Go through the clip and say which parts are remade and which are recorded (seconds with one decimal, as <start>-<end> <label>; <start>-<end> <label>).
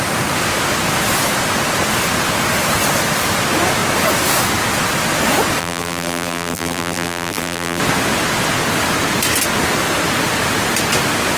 0.0-5.6 recorded; 5.6-7.8 remade; 7.8-11.4 recorded